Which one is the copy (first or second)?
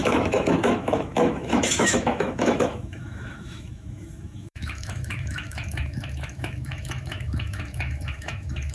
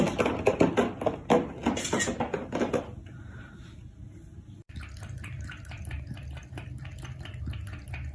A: first